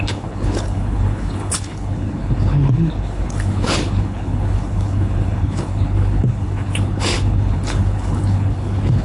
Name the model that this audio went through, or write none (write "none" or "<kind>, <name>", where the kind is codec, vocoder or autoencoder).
codec, HILCodec